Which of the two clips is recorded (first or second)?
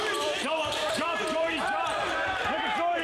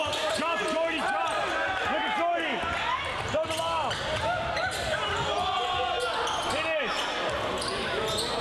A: second